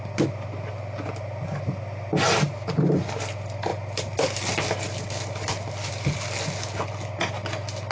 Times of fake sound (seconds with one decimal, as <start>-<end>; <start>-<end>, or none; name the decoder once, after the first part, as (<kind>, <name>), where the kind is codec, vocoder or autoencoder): none